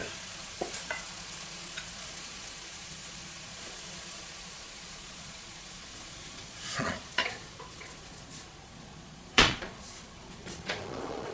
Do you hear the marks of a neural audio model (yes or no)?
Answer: yes